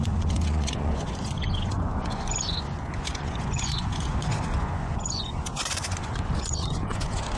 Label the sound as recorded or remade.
remade